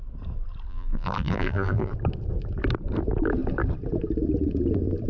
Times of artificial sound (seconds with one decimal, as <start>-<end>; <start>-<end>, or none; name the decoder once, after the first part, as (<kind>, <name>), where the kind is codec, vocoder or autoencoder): 0.7-1.9 (vocoder, BigVGAN v2)